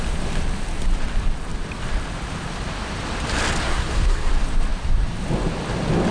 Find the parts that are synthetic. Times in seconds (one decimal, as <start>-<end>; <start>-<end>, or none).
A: 3.6-4.3